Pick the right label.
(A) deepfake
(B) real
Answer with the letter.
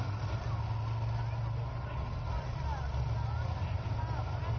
B